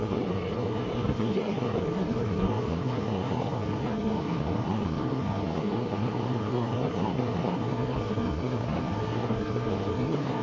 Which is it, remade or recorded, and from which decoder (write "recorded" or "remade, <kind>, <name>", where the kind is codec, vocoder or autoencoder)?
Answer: remade, codec, SNAC